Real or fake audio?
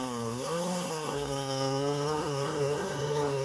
fake